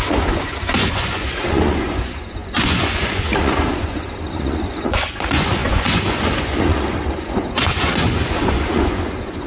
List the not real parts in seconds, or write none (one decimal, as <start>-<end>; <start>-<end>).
0.0-9.5